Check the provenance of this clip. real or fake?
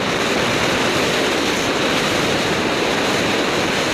real